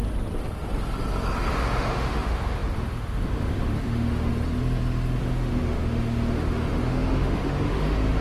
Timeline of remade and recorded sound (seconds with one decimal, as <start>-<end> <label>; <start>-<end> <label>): 0.0-1.5 recorded; 1.5-4.3 remade; 4.3-5.2 recorded; 5.2-8.2 remade